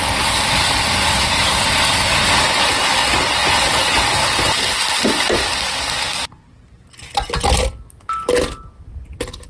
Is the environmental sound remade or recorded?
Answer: recorded